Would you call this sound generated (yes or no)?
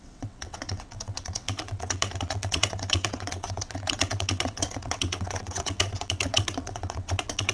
yes